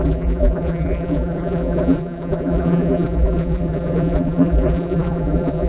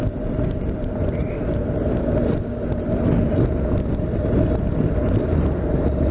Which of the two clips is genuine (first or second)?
second